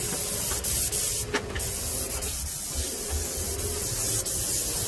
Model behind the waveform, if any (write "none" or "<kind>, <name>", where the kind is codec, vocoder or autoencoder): none